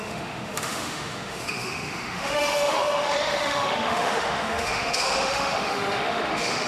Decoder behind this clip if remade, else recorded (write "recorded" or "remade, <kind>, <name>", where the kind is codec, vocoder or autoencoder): remade, autoencoder, DAC-VAE